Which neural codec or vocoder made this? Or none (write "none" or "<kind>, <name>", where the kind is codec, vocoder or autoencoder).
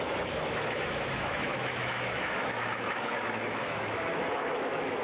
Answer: autoencoder, DAC-VAE